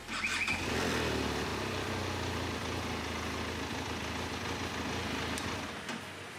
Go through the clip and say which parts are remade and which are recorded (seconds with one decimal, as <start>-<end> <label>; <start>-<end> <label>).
0.0-6.4 recorded